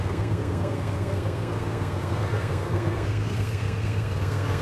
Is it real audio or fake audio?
fake